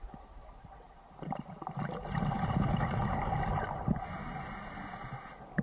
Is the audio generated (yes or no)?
no